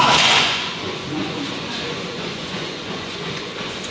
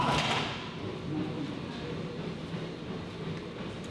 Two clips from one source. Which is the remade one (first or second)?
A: first